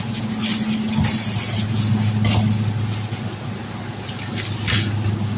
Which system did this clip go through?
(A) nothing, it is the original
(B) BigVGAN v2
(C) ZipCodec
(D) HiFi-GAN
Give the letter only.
A